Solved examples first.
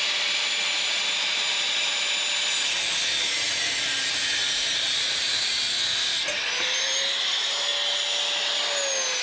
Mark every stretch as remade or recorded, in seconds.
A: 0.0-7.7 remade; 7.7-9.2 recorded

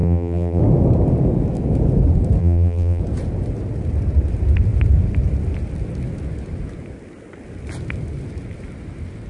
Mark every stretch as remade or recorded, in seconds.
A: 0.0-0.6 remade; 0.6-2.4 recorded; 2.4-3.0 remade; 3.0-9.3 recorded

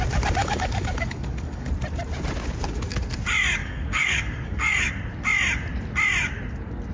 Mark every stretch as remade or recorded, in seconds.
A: 0.0-0.4 recorded; 0.4-1.7 remade; 1.7-3.6 recorded; 3.6-4.9 remade; 4.9-6.9 recorded